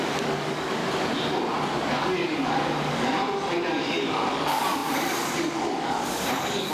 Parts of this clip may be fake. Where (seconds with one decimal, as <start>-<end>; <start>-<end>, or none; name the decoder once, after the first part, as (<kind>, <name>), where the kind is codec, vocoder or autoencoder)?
0.0-0.8 (codec, DAC); 2.0-3.2; 3.7-6.7